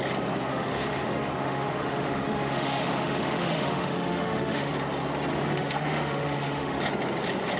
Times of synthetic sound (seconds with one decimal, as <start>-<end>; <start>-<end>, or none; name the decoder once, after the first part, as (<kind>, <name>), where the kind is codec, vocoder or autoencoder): 0.5-4.7 (autoencoder, DAC-VAE); 5.3-6.8